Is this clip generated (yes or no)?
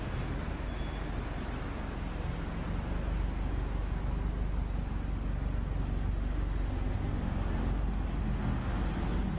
no